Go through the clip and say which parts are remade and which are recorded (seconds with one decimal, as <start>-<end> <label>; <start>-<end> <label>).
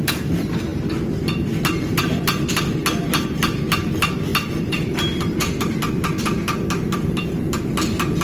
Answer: 0.0-8.2 recorded